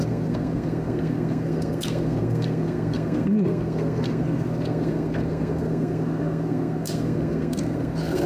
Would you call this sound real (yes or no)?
no